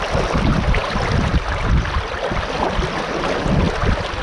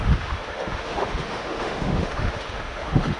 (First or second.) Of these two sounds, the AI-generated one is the second